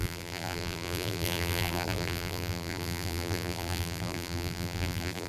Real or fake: fake